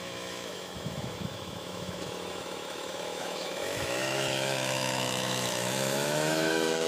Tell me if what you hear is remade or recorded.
remade